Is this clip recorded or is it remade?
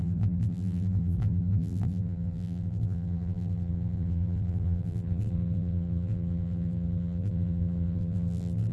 remade